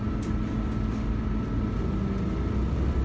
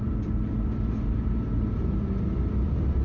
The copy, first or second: second